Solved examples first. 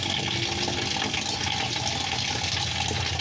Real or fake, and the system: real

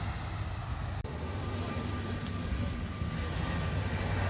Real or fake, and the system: real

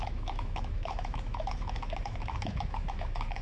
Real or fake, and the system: fake, autoencoder, DAC-VAE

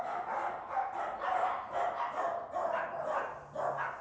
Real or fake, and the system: real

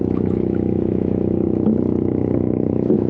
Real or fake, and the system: fake, autoencoder, DAC-VAE